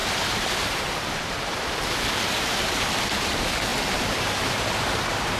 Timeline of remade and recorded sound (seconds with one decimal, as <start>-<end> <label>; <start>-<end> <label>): 0.0-5.4 remade